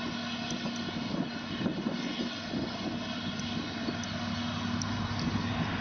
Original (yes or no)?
yes